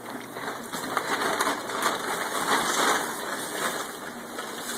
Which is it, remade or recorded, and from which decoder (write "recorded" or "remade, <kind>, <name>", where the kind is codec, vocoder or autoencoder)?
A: recorded